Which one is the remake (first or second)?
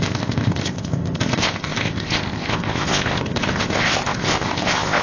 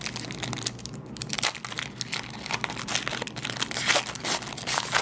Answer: first